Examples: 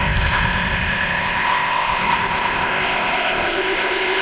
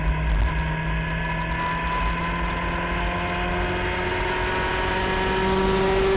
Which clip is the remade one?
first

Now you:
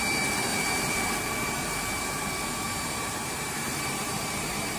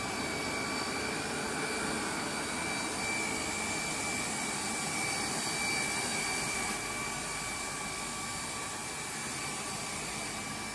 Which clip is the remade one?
first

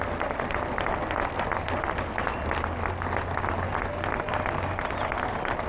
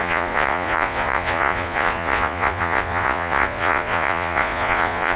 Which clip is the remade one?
second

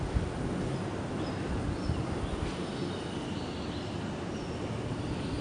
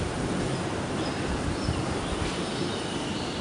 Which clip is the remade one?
second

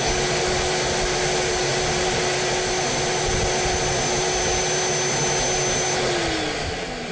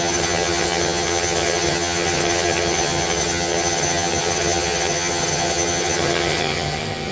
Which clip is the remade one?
second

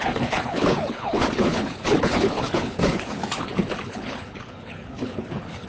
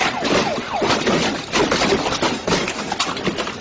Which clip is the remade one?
first